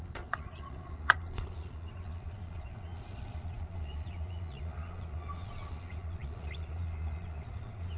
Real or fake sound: fake